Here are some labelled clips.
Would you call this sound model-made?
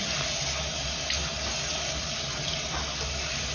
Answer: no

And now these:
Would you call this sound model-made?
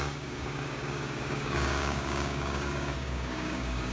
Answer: yes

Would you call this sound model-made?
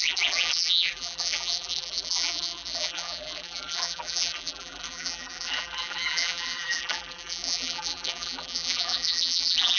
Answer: yes